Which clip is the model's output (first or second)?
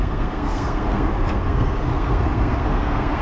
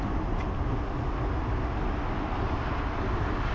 first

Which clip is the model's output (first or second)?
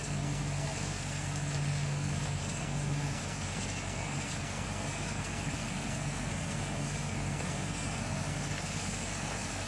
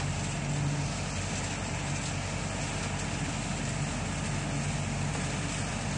first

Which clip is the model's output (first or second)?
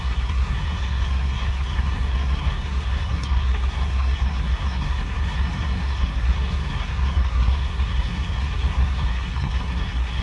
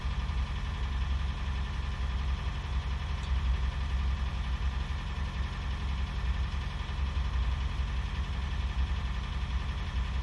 first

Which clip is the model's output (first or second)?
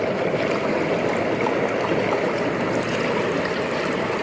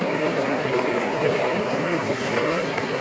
second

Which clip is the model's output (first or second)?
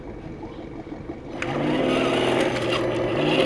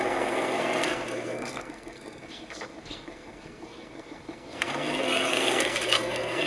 second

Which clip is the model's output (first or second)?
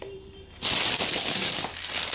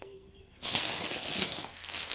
second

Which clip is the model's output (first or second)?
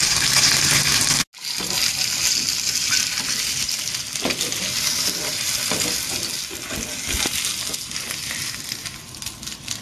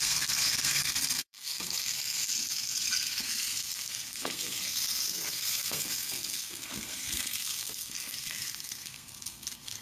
second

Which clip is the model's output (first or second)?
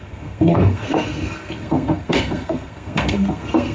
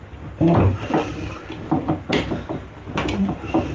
first